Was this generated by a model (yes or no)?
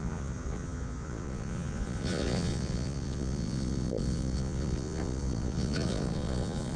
yes